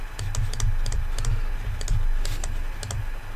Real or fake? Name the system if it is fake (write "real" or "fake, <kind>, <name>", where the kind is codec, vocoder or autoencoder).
real